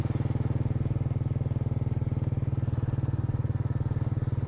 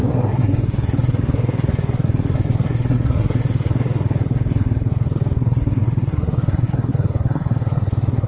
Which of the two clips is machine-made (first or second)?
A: second